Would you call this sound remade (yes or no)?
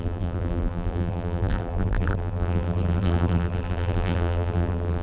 yes